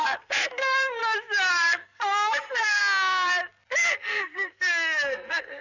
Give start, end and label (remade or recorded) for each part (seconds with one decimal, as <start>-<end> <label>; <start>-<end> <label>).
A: 0.0-1.0 remade; 1.0-1.5 recorded; 1.5-2.8 remade; 2.8-3.9 recorded; 3.9-5.6 remade